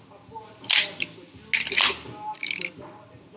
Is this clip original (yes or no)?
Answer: yes